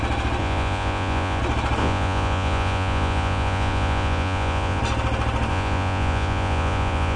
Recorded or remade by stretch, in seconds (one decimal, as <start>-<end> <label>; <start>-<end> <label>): 0.0-0.4 recorded; 0.4-1.4 remade; 1.4-1.8 recorded; 1.8-4.8 remade; 4.8-5.5 recorded; 5.5-7.2 remade